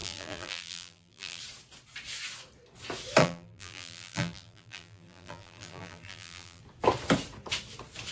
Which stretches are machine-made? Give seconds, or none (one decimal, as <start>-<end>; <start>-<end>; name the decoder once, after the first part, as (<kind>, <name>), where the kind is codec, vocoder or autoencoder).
0.0-1.4 (vocoder, BigVGAN v2); 3.2-6.6